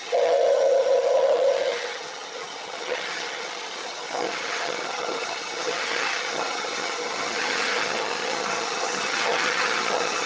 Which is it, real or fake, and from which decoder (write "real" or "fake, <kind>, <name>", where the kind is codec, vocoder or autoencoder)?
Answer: fake, vocoder, HiFi-GAN